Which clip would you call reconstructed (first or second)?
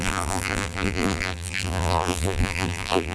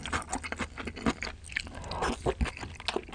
first